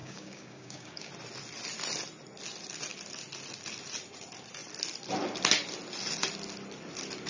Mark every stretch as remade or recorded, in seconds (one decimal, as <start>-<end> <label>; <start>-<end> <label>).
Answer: 0.0-1.1 remade; 1.1-7.3 recorded